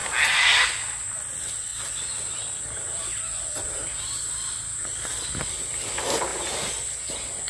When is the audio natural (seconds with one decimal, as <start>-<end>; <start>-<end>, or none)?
0.0-6.3; 7.0-7.5